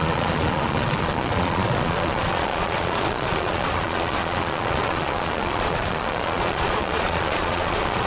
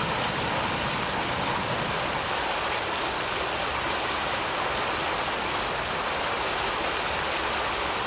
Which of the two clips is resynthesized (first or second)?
first